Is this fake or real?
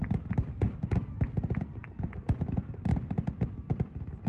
real